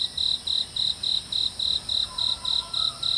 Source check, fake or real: real